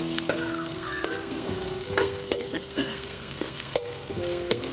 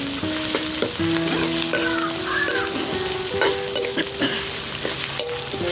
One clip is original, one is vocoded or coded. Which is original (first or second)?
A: second